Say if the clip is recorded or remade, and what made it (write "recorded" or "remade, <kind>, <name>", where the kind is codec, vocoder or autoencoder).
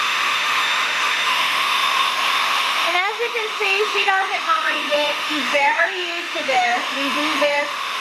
remade, autoencoder, DAC-VAE